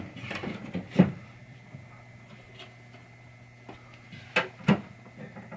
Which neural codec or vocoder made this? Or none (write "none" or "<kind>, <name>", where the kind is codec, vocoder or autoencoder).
none